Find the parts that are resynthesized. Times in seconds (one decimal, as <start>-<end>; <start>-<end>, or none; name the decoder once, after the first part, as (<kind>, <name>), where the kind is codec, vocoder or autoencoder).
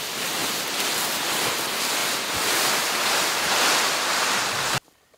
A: none